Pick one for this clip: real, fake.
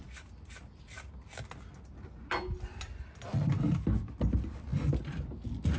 real